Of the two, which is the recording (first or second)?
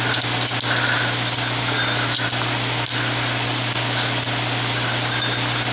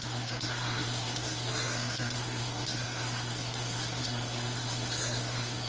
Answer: first